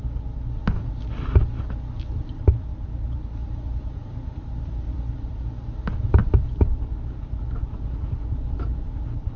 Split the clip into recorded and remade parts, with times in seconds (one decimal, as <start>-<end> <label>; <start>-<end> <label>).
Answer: 0.0-1.4 remade; 1.4-2.7 recorded; 2.7-5.4 remade; 5.4-6.2 recorded; 6.2-7.4 remade; 7.4-9.4 recorded